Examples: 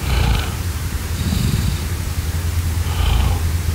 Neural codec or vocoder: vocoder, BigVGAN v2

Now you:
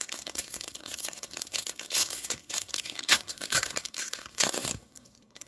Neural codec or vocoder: codec, SNAC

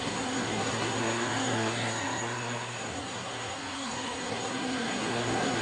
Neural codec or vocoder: codec, SNAC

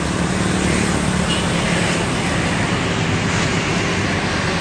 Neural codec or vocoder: none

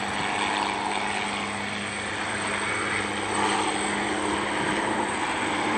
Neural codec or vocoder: none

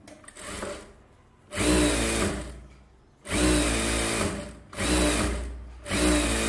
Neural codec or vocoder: none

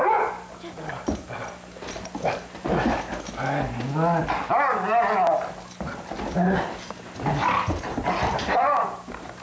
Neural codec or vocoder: none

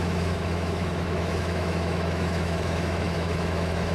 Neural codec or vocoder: autoencoder, DAC-VAE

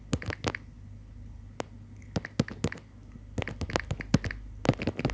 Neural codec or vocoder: none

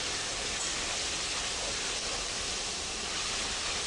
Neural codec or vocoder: none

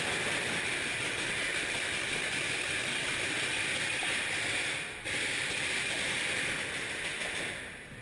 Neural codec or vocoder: none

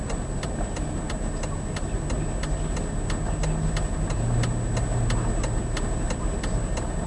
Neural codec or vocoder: none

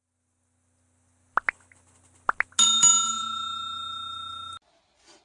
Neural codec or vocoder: none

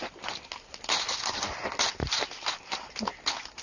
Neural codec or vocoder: none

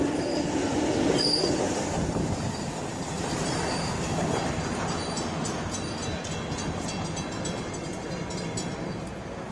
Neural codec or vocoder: vocoder, BigVGAN v2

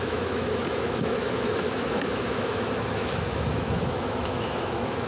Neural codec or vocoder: autoencoder, DAC-VAE